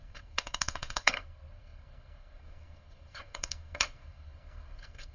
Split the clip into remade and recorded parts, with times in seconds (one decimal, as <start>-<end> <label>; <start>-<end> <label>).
0.0-5.1 remade